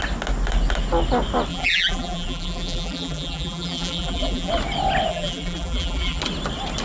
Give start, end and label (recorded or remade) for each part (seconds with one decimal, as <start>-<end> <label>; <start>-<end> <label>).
0.0-1.5 recorded; 1.5-4.5 remade; 4.5-5.1 recorded; 5.1-6.2 remade; 6.2-6.8 recorded